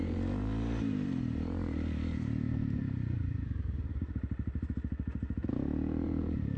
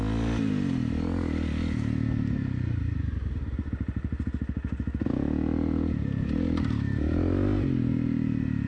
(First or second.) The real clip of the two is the second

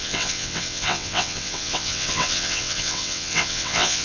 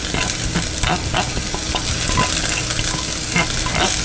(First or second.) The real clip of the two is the second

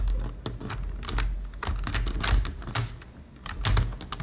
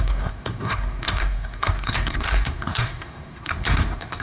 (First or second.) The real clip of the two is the first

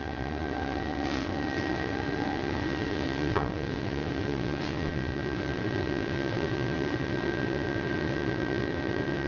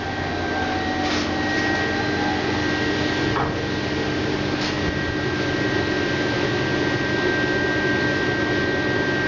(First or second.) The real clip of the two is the second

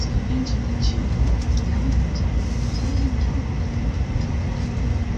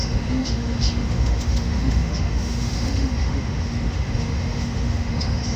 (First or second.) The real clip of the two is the first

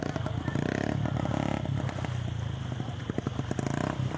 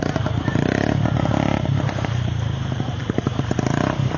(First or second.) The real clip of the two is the first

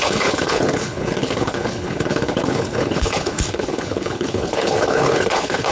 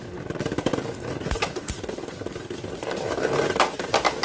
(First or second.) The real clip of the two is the second